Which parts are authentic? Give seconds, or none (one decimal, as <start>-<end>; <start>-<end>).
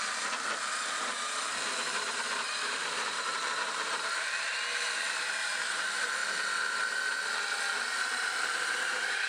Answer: 6.2-7.9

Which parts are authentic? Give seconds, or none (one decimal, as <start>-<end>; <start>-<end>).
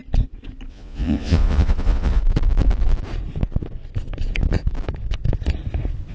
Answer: 0.0-0.7; 2.2-6.1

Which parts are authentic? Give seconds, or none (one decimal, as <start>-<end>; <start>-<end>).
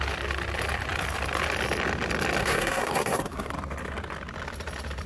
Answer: 0.0-2.4; 3.5-5.1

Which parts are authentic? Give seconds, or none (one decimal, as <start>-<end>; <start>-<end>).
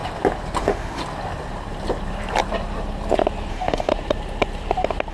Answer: 0.0-0.6; 1.0-3.5; 3.9-5.1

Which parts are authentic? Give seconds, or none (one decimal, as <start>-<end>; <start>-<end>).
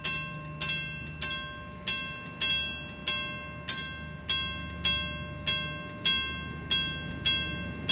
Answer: 0.0-7.9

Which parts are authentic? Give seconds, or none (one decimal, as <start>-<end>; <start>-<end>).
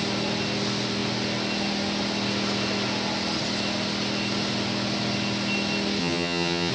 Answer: 0.0-6.0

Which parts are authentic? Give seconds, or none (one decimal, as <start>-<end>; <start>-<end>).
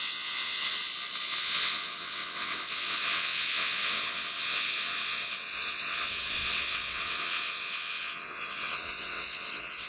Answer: 0.8-1.4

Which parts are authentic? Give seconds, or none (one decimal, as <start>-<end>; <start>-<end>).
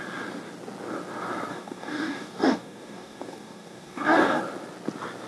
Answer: 0.0-1.5; 4.4-5.3